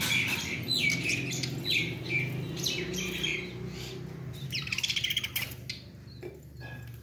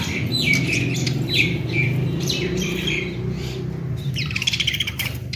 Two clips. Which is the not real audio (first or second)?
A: second